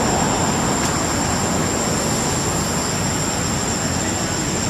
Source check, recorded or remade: recorded